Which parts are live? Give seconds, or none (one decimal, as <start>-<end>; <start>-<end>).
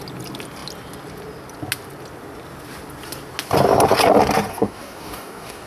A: 0.0-4.5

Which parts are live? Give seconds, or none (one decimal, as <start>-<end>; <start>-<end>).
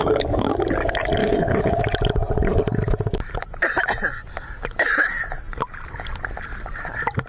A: 0.5-1.2; 1.8-7.3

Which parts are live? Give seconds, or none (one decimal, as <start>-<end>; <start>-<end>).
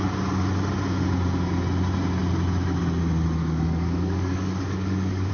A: 0.0-3.4